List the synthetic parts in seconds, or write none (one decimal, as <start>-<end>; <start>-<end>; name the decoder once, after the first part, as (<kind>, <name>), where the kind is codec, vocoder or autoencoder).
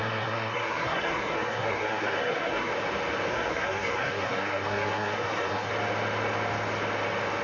0.0-2.7 (codec, SNAC); 3.3-5.7